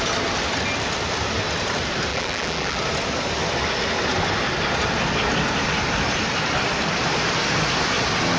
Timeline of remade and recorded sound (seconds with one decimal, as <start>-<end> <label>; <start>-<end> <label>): 0.0-2.1 recorded; 2.1-2.8 remade; 2.8-8.4 recorded